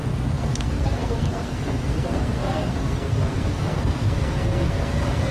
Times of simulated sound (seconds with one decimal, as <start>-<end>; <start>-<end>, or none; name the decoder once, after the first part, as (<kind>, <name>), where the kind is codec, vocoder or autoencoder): 0.0-5.3 (codec, SNAC)